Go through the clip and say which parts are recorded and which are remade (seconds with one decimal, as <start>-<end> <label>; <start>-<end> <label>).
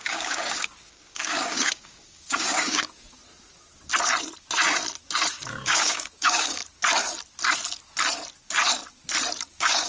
0.0-3.2 remade; 3.2-5.3 recorded; 5.3-6.6 remade; 6.6-9.5 recorded; 9.5-9.9 remade